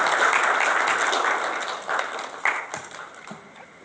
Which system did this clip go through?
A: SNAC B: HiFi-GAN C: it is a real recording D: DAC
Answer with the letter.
C